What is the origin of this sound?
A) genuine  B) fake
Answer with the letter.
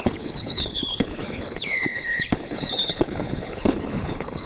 B